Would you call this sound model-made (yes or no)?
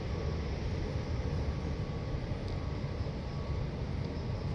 yes